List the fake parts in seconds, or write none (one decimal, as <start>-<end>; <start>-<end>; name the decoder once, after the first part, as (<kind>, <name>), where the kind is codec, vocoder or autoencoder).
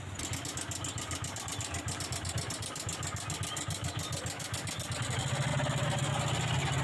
none